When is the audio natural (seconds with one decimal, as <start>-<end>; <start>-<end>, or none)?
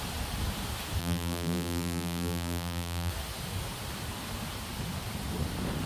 0.0-1.0; 3.1-5.9